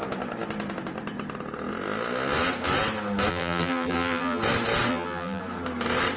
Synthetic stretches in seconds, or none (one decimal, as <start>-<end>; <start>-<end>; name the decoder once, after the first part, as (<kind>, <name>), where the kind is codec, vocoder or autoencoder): 3.3-4.4 (vocoder, BigVGAN v2); 4.9-5.4